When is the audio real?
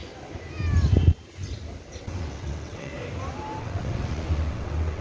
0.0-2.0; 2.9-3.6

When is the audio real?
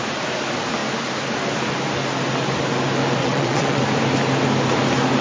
0.0-3.2; 3.8-5.2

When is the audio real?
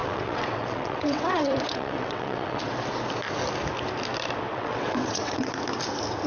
2.6-4.5; 5.5-6.3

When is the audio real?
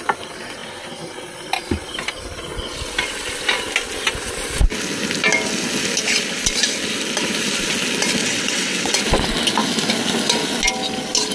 0.0-8.2; 9.0-11.3